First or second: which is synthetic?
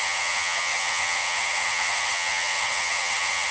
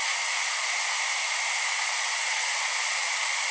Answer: first